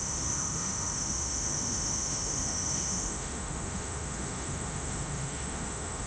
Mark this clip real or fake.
fake